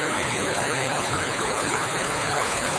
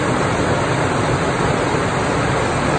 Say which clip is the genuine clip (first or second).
second